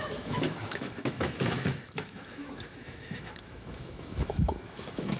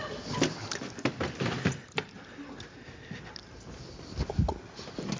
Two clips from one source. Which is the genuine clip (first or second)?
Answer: second